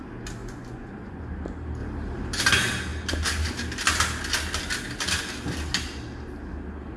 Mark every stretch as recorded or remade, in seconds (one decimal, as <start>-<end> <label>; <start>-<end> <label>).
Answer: 0.0-0.4 recorded; 0.4-1.2 remade; 1.2-7.0 recorded